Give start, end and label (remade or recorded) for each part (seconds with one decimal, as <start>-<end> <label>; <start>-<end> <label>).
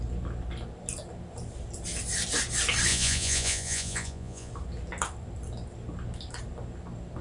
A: 0.0-2.9 recorded; 2.9-4.5 remade; 4.5-7.2 recorded